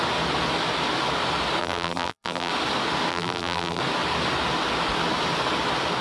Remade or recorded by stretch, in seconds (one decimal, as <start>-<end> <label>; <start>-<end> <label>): 0.0-1.6 recorded; 1.6-2.5 remade; 2.5-3.1 recorded; 3.1-3.8 remade; 3.8-6.0 recorded

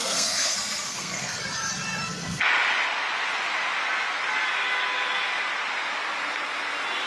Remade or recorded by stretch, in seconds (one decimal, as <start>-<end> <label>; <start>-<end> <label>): 0.0-1.4 remade; 1.4-2.0 recorded; 2.0-2.5 remade; 2.5-7.1 recorded